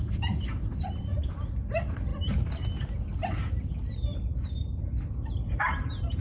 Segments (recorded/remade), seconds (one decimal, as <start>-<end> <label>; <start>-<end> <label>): 0.0-2.1 remade; 2.1-5.5 recorded; 5.5-6.2 remade